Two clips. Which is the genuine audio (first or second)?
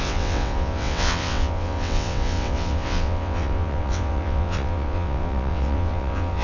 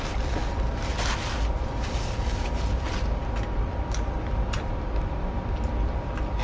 second